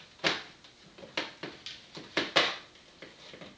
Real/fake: real